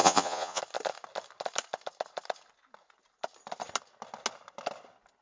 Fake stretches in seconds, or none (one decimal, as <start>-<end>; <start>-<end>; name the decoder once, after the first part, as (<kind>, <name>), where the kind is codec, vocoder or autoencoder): 0.0-0.6 (vocoder, Vocos)